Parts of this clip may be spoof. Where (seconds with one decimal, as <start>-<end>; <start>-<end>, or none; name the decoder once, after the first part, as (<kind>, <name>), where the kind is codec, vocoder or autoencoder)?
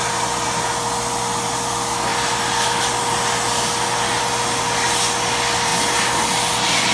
none